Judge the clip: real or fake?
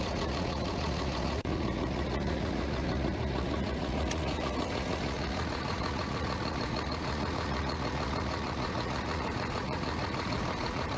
fake